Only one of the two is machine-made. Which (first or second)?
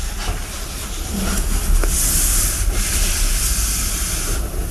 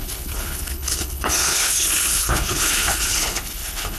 second